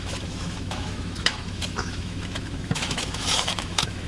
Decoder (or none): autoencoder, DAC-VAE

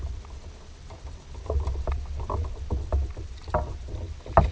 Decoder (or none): none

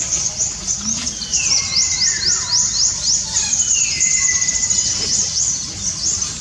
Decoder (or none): none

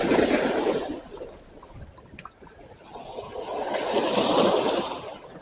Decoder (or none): none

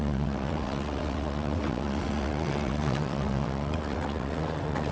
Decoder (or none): vocoder, WaveNeXt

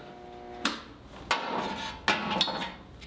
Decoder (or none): none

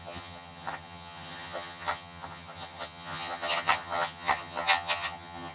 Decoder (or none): vocoder, HiFi-GAN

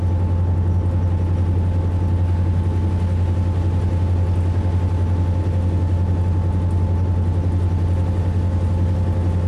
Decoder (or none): none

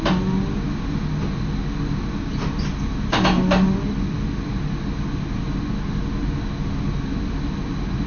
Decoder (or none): none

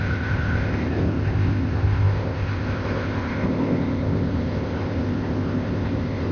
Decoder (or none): codec, ZipCodec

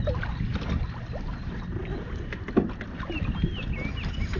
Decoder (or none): none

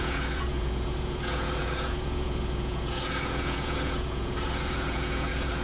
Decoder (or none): vocoder, Vocos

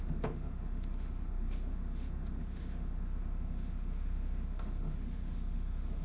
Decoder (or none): autoencoder, DAC-VAE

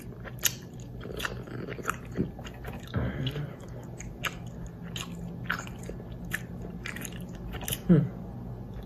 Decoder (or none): none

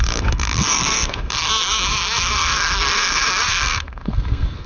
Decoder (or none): codec, SNAC